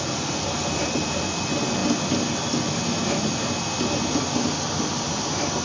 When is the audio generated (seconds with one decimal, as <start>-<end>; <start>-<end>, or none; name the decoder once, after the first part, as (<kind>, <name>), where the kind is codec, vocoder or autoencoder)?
none